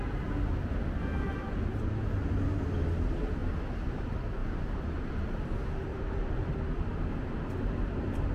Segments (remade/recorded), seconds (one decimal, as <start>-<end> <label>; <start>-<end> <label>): 0.0-4.4 recorded; 4.4-5.3 remade; 5.3-5.9 recorded; 5.9-6.5 remade; 6.5-8.3 recorded

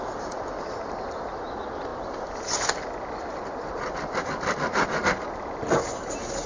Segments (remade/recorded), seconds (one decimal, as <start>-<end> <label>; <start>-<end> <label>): 0.0-6.5 recorded